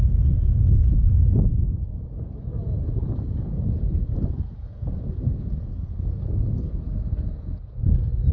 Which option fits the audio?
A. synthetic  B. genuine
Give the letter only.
A